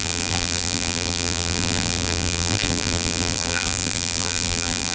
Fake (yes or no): yes